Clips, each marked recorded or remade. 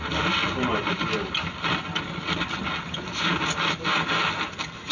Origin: recorded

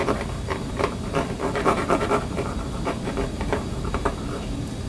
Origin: remade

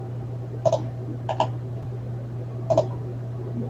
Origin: recorded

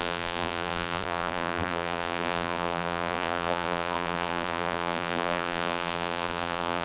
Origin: remade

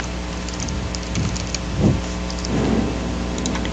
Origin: recorded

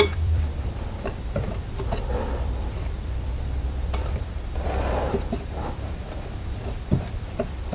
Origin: remade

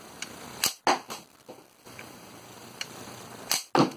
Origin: recorded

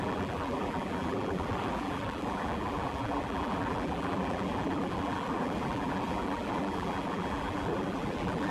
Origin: remade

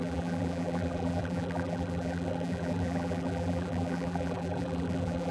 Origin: remade